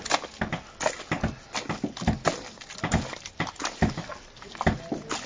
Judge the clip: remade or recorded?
recorded